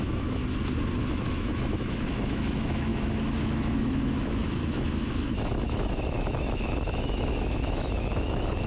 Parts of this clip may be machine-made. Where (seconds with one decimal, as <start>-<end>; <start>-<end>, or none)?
0.0-0.4; 1.1-8.7